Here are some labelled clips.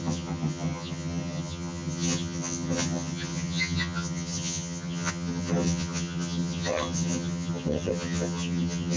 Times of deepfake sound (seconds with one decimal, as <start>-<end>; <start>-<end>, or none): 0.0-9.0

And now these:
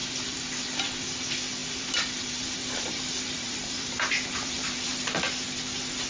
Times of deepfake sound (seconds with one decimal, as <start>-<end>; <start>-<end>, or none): 0.0-0.7; 1.6-5.3

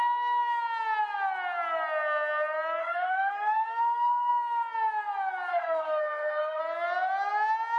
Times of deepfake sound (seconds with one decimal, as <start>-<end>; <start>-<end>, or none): 2.8-4.3; 5.5-6.6